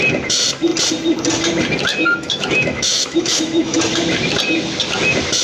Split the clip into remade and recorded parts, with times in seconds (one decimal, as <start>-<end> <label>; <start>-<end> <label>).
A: 0.0-1.9 recorded; 1.9-3.8 remade; 3.8-5.4 recorded